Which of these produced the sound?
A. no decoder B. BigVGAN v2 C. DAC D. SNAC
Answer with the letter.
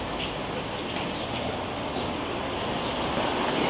A